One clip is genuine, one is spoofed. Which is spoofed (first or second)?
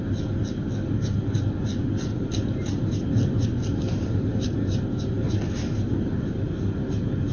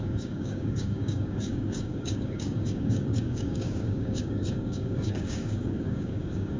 second